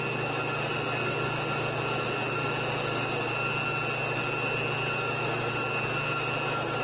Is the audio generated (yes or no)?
no